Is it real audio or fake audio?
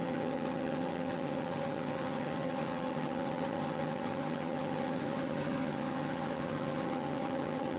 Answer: fake